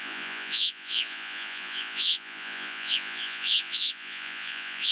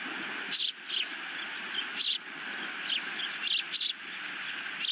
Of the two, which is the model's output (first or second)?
first